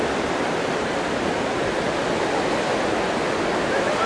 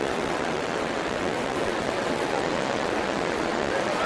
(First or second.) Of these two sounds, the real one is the first